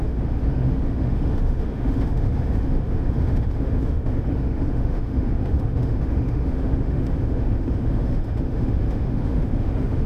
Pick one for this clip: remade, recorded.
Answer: remade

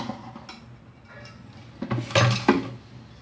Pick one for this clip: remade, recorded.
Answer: recorded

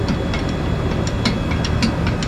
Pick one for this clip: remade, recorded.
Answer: recorded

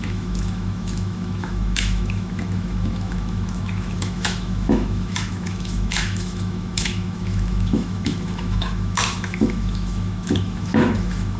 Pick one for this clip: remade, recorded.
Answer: remade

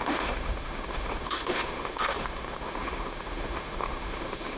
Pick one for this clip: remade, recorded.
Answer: remade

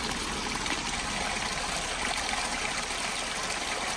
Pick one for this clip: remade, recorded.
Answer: recorded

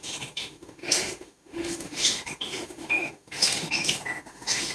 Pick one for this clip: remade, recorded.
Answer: remade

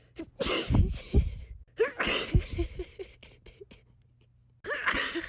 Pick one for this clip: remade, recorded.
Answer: recorded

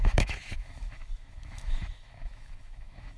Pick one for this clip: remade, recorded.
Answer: remade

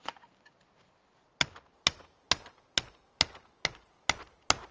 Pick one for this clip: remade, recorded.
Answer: recorded